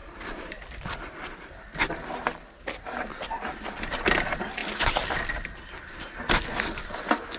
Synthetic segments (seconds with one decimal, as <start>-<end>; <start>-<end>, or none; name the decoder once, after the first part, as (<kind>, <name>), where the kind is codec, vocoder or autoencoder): none

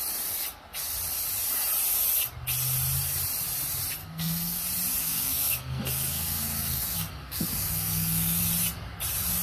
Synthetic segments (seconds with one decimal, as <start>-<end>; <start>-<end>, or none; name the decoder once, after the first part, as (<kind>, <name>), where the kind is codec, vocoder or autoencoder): 4.0-4.6 (codec, SNAC); 5.0-8.4